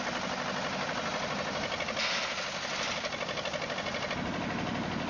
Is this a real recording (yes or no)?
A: yes